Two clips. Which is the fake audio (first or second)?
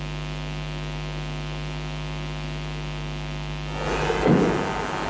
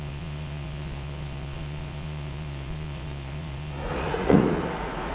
second